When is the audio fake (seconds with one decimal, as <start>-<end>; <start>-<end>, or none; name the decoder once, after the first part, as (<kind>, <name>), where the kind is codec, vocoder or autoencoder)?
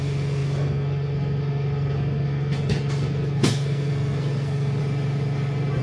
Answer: 0.0-4.8 (codec, SNAC)